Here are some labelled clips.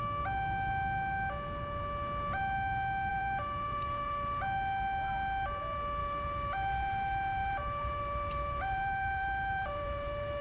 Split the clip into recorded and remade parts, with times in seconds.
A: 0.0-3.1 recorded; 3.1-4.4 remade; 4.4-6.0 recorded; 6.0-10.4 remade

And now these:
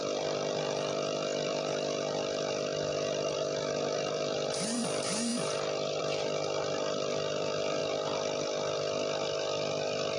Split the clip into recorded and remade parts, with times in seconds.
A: 0.0-2.7 remade; 2.7-4.1 recorded; 4.1-5.3 remade; 5.3-6.0 recorded; 6.0-7.8 remade; 7.8-10.2 recorded

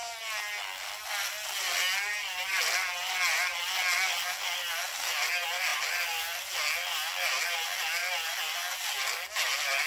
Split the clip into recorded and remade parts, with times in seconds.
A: 0.0-2.1 recorded; 2.1-2.6 remade; 2.6-9.9 recorded

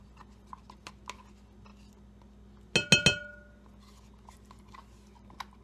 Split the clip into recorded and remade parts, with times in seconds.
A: 0.0-5.6 recorded

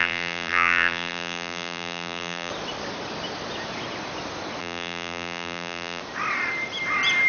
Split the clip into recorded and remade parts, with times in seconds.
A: 0.0-2.5 remade; 2.5-4.6 recorded; 4.6-6.0 remade; 6.0-7.3 recorded

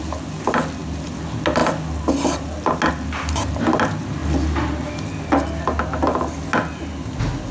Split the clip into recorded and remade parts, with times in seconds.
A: 0.0-7.5 recorded